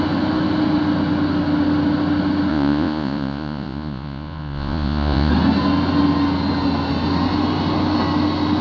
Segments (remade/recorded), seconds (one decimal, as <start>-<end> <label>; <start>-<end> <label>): 0.0-2.5 recorded; 2.5-5.3 remade; 5.3-8.6 recorded